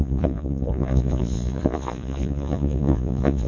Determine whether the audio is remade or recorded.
remade